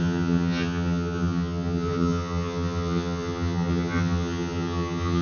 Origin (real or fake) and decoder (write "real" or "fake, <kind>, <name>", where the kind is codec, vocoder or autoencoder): fake, vocoder, HiFi-GAN